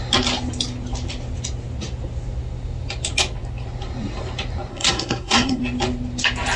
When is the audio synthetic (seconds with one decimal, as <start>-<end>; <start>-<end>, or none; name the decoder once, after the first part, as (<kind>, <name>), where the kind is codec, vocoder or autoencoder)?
4.7-5.6 (codec, SNAC)

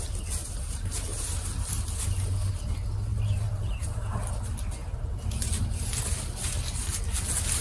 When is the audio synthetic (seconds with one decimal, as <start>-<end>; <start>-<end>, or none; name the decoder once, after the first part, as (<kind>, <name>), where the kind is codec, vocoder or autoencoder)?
0.4-1.5 (vocoder, BigVGAN v2); 3.1-4.3; 4.8-6.0

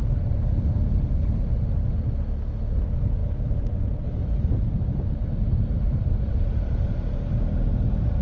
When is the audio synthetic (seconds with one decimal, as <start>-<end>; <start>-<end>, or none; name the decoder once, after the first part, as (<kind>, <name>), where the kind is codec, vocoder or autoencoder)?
3.2-7.3 (vocoder, BigVGAN v2)

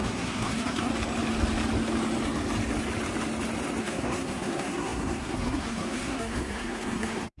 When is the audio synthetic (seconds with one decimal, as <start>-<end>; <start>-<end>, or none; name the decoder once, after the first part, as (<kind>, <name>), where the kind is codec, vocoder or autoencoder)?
0.0-0.9 (codec, SNAC); 3.8-7.4

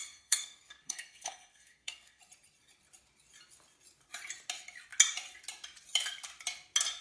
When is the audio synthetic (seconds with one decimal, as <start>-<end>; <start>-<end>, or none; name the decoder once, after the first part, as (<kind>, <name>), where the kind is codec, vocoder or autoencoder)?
0.0-2.2 (codec, SNAC)

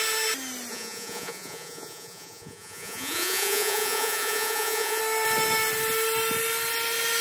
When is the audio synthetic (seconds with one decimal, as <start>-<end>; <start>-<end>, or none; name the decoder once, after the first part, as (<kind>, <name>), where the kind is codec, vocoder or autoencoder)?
0.7-5.0 (vocoder, Vocos)

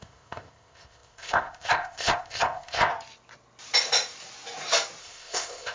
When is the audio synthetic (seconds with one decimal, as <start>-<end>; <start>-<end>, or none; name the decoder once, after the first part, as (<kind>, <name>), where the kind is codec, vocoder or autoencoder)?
0.0-2.9 (codec, ZipCodec); 5.0-5.7

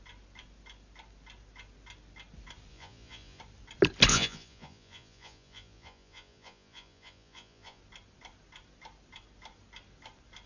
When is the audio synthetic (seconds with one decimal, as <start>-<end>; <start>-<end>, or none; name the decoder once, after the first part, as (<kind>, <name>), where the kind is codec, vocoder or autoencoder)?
2.7-3.4 (vocoder, Vocos); 4.1-7.8